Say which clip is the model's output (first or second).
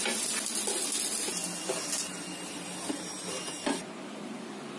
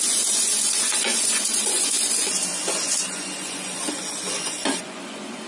second